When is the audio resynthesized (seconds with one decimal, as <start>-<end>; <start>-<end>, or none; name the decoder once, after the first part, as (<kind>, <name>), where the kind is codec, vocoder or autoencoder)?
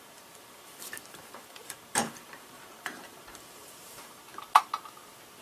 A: 0.0-4.3 (vocoder, BigVGAN v2)